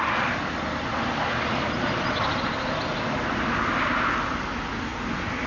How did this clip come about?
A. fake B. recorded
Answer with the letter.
B